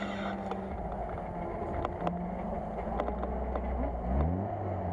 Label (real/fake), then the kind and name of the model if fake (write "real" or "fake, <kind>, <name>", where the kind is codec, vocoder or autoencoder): real